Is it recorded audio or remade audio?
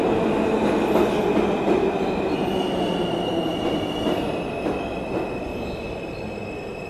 recorded